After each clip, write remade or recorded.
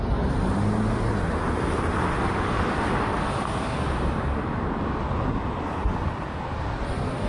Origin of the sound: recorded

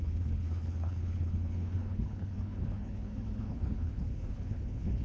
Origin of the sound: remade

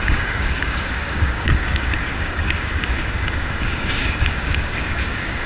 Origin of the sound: remade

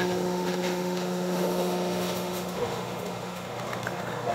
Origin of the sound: remade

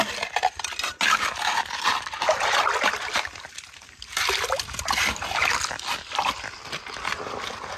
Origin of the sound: recorded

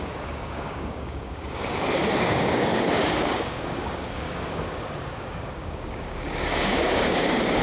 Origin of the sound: remade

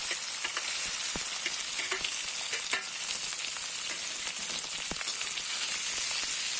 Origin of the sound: recorded